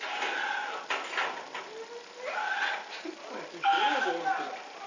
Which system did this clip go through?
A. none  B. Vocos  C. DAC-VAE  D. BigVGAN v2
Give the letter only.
A